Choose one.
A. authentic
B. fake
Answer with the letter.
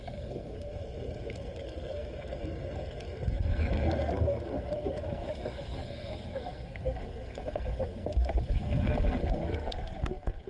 B